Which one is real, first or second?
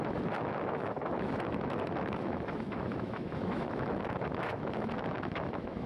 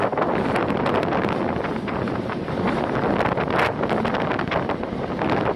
second